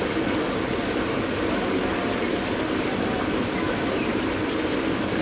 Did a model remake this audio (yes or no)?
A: no